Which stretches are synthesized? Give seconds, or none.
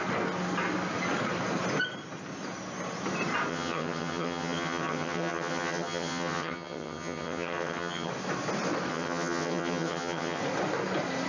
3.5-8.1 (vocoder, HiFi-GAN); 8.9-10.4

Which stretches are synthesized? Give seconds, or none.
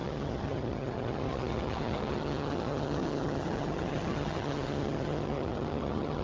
0.0-6.2 (vocoder, HiFi-GAN)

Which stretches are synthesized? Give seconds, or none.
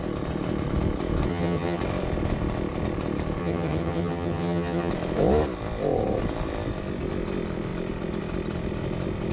1.3-1.8 (vocoder, HiFi-GAN); 3.4-4.9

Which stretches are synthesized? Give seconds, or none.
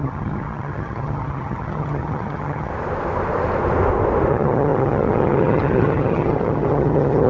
0.0-2.7 (vocoder, HiFi-GAN); 4.3-7.3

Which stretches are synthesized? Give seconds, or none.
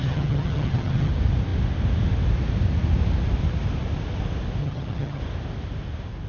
0.0-1.1 (vocoder, HiFi-GAN); 4.6-5.2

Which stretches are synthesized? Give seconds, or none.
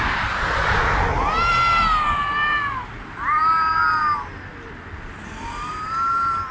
none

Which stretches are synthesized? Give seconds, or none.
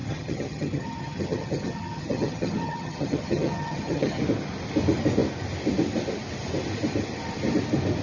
0.0-4.2 (vocoder, HiFi-GAN)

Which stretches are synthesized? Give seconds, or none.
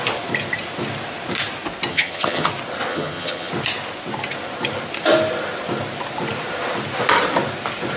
1.9-2.5 (vocoder, HiFi-GAN); 2.9-3.5